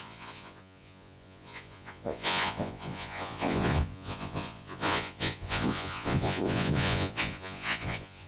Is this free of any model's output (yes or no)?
no